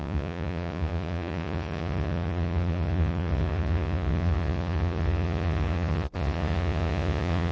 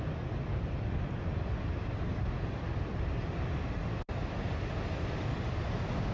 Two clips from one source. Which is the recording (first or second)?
second